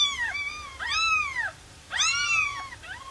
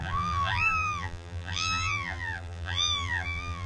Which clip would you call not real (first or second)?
second